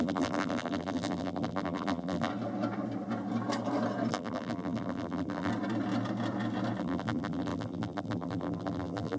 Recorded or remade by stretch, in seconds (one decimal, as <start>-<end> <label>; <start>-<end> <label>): 0.0-2.3 remade; 2.3-4.1 recorded; 4.1-5.5 remade; 5.5-6.8 recorded; 6.8-9.2 remade